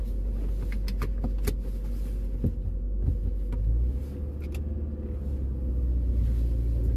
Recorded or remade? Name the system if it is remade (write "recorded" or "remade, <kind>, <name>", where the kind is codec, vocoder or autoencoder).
recorded